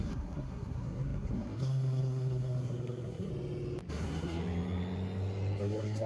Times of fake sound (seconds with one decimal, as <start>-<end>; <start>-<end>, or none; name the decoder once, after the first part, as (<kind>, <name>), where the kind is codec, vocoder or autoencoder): 0.0-3.3 (codec, SNAC); 3.9-4.4; 5.6-6.1